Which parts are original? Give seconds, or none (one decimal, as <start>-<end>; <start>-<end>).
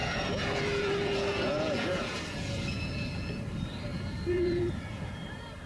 3.4-3.9; 5.2-5.7